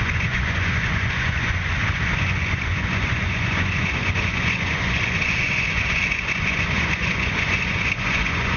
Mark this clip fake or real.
fake